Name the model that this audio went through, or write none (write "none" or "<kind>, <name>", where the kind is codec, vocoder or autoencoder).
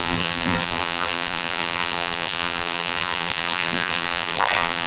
vocoder, BigVGAN v2